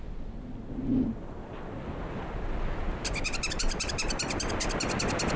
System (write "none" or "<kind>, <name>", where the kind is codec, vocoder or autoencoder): none